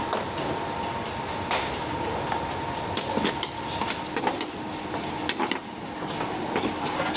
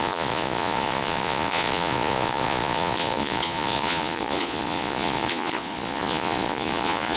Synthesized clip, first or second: second